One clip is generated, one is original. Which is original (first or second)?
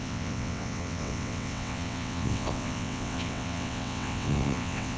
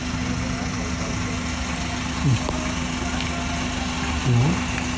second